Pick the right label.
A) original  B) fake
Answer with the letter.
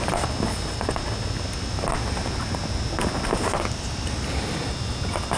A